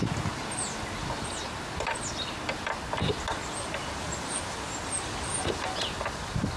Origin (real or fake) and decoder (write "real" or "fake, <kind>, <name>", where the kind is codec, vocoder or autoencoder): real